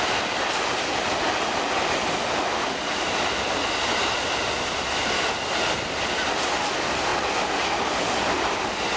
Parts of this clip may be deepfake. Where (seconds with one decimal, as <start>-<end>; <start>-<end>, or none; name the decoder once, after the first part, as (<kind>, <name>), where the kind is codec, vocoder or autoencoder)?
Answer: none